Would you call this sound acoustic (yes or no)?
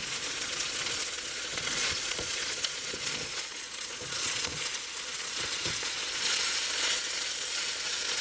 no